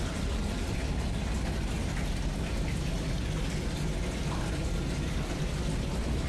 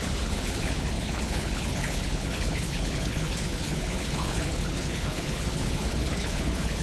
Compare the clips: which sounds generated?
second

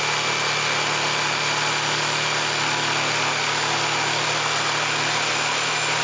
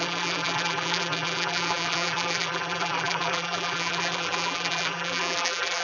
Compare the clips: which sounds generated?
second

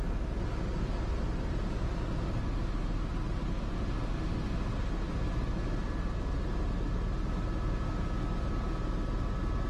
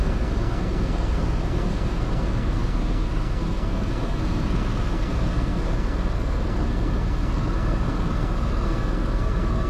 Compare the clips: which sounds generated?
second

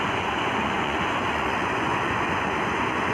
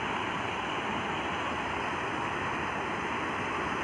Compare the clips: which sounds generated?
first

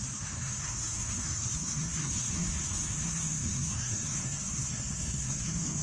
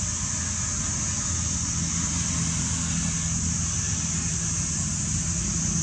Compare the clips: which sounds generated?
first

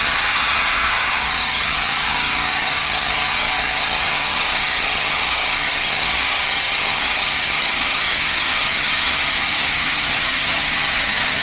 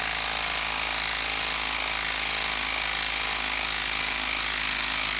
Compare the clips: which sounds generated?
first